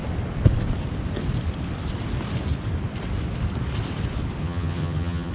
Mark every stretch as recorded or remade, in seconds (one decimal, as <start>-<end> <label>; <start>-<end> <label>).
0.0-4.4 recorded; 4.4-5.3 remade